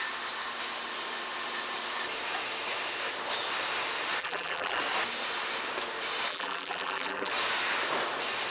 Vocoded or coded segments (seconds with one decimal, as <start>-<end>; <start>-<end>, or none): 4.2-4.8; 6.3-7.3